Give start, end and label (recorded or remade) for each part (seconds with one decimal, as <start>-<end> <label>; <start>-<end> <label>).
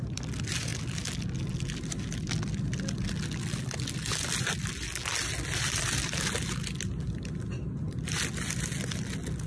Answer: 0.0-9.5 recorded